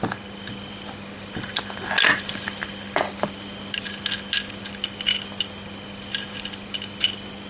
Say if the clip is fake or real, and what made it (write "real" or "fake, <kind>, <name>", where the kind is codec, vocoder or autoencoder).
real